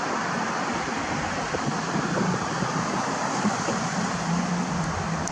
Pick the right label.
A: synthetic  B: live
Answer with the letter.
B